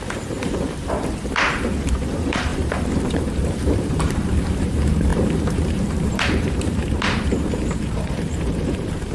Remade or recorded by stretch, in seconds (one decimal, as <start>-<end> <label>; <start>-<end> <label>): 0.0-9.1 remade